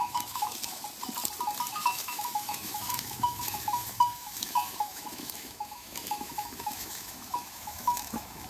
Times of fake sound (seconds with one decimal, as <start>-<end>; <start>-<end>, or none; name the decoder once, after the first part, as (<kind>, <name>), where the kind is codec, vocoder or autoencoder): 0.0-0.8 (autoencoder, DAC-VAE); 1.7-8.5